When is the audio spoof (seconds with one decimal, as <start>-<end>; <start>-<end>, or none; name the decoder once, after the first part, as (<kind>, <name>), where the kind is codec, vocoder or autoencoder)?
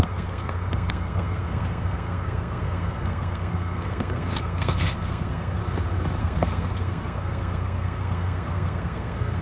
0.0-5.6 (codec, SNAC); 6.2-9.4